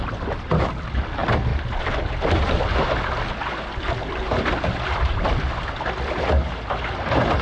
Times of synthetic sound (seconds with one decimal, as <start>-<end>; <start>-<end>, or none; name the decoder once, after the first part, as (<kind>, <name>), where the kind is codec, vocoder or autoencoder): none